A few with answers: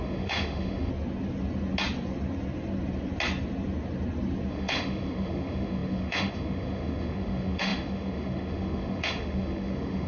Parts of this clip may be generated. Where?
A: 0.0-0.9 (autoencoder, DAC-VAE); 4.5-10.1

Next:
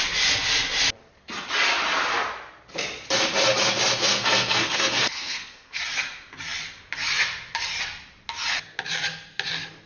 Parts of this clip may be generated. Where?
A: 4.0-5.8 (codec, SNAC)

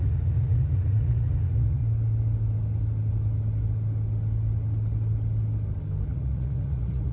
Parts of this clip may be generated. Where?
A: 0.0-1.8 (vocoder, Vocos); 6.1-7.1

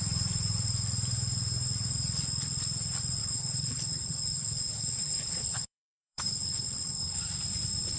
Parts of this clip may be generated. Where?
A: 3.2-7.2 (codec, HILCodec)

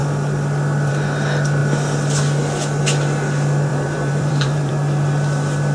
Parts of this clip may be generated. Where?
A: 3.7-4.7 (vocoder, BigVGAN v2)

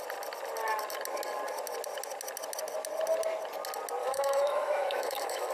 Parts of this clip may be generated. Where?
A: 4.0-5.5 (autoencoder, DAC-VAE)